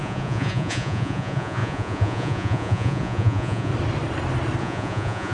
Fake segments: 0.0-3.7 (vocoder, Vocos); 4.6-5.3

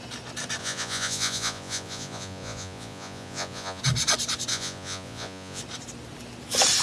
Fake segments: 0.6-3.8 (vocoder, Vocos); 4.5-5.6